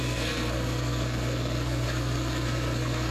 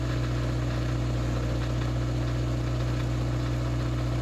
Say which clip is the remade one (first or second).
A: first